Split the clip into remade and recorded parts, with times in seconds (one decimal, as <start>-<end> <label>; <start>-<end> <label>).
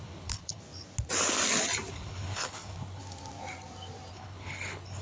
0.0-0.6 remade; 0.6-1.9 recorded; 1.9-3.0 remade; 3.0-4.1 recorded; 4.1-5.0 remade